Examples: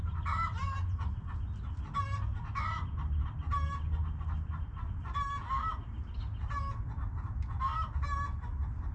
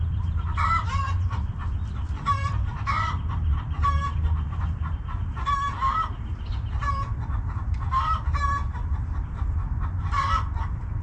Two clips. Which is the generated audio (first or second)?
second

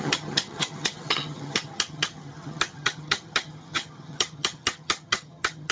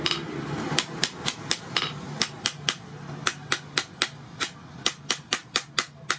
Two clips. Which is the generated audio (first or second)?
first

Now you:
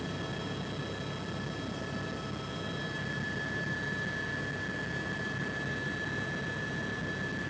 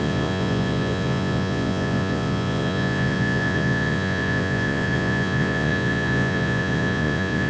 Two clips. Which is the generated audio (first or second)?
second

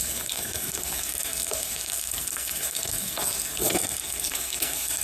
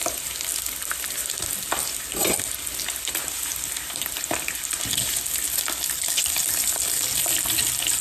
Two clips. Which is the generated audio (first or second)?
first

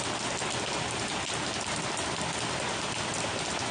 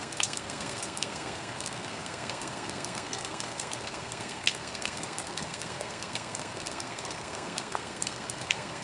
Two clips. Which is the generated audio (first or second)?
second